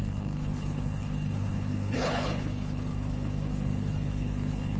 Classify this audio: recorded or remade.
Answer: remade